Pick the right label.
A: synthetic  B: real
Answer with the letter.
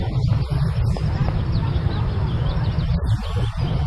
B